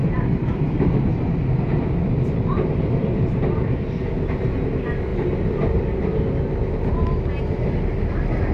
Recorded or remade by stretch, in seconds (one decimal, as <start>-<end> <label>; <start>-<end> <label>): 0.0-3.4 remade; 3.4-8.5 recorded